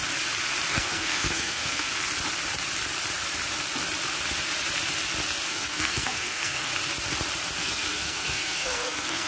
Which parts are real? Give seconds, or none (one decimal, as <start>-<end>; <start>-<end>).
0.0-0.7; 1.9-5.5; 6.7-7.6